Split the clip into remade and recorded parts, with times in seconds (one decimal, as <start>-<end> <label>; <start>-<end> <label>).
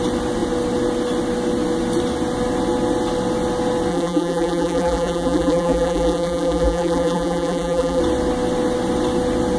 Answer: 0.0-3.9 recorded; 3.9-8.0 remade; 8.0-9.6 recorded